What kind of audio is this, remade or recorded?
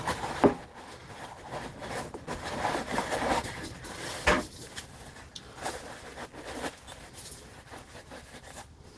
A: recorded